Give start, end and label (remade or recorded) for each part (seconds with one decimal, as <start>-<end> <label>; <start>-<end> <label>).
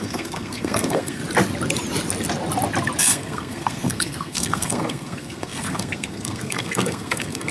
0.0-1.2 remade; 1.2-3.0 recorded; 3.0-7.5 remade